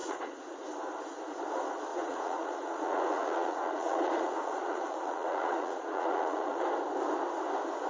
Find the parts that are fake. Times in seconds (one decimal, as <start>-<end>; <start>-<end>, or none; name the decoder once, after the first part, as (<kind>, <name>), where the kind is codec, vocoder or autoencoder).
0.0-0.6 (vocoder, Vocos); 1.9-6.6